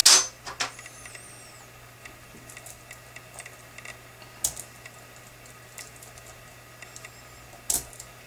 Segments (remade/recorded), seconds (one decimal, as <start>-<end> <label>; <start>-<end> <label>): 0.0-8.3 recorded